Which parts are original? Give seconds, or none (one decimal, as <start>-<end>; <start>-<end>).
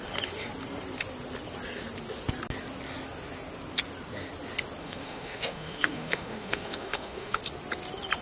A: 0.0-4.8; 7.4-8.2